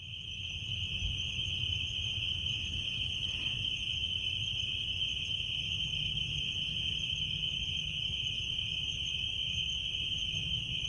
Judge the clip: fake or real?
real